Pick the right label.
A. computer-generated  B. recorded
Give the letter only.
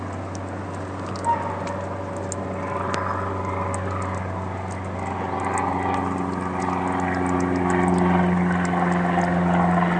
B